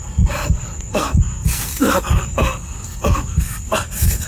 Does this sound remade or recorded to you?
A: remade